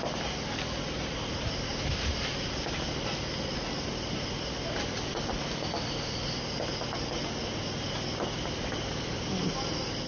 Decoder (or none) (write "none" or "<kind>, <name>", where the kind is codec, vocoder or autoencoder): none